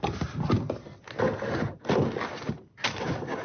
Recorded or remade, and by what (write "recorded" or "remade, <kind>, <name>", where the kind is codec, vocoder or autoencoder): recorded